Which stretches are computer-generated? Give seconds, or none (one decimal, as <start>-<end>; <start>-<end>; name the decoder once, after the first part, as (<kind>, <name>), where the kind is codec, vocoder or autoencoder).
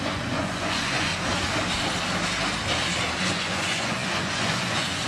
0.0-1.1 (vocoder, Vocos); 3.2-5.1